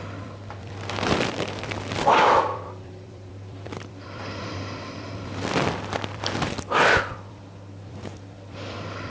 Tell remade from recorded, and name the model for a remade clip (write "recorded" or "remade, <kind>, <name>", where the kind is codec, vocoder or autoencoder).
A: remade, vocoder, BigVGAN v2